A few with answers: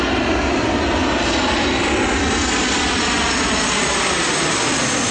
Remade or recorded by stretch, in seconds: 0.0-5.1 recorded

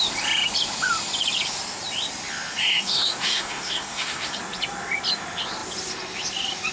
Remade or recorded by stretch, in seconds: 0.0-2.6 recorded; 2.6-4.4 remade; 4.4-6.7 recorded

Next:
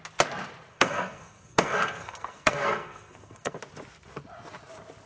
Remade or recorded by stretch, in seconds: 0.0-0.7 recorded; 0.7-3.6 remade; 3.6-5.1 recorded

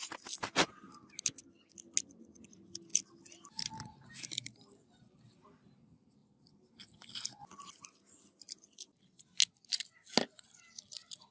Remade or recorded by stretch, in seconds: 0.0-11.3 recorded

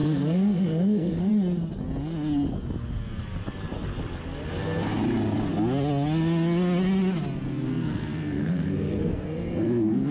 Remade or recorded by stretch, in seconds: 0.0-1.3 remade; 1.3-7.7 recorded; 7.7-10.1 remade